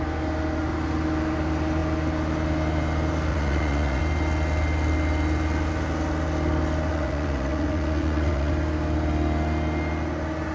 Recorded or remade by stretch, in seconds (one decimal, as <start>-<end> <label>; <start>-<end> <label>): 0.0-3.3 recorded; 3.3-4.0 remade; 4.0-6.9 recorded; 6.9-8.5 remade; 8.5-10.5 recorded